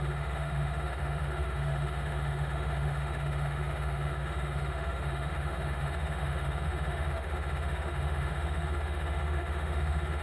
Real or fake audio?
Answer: fake